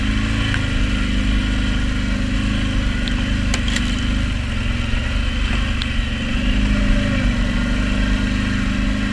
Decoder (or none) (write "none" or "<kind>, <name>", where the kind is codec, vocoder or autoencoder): none